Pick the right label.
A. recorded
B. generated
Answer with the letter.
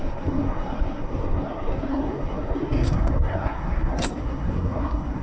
B